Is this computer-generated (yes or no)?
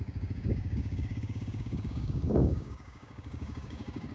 yes